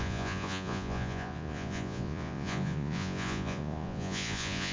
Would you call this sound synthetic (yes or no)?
yes